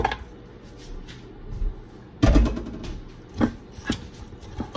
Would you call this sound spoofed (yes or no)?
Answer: no